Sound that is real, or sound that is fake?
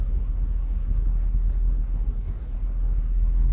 fake